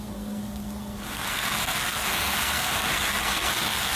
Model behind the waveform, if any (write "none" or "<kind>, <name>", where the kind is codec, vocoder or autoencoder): codec, SNAC